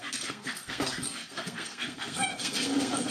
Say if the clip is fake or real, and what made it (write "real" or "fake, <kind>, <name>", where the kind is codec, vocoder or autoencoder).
fake, codec, SNAC